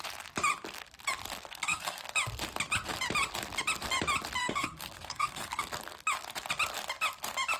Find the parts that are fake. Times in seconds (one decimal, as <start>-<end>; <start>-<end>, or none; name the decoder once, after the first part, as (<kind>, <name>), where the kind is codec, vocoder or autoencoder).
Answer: 1.5-2.0 (codec, SNAC); 4.4-5.6